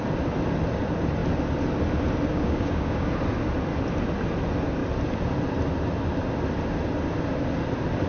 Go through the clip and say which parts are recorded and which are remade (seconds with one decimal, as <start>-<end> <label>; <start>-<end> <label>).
0.0-2.3 recorded; 2.3-3.1 remade; 3.1-8.1 recorded